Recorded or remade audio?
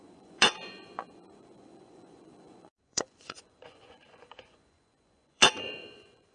remade